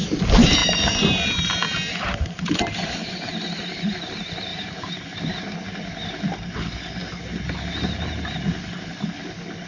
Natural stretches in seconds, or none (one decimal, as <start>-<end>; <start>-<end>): 0.0-0.6; 3.6-4.5; 5.1-9.7